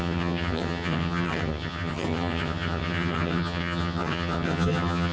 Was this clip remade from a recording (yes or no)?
yes